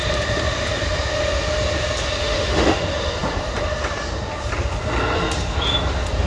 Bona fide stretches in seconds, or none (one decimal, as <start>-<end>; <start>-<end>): 0.0-2.2; 2.8-6.3